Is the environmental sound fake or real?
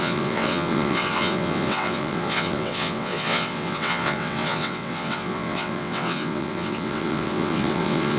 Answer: fake